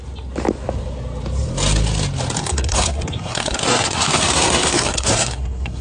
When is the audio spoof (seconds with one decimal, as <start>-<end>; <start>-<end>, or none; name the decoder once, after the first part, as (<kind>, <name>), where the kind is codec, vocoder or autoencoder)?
2.4-5.8 (codec, SNAC)